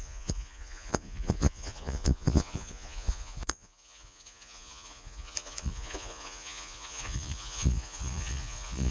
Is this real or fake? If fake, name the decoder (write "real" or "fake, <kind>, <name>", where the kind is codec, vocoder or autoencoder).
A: fake, vocoder, Vocos